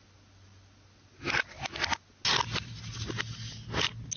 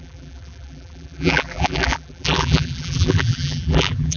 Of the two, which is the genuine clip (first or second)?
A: first